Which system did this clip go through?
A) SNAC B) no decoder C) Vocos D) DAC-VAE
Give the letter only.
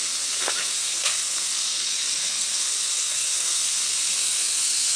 A